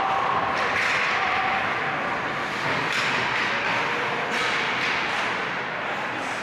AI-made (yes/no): no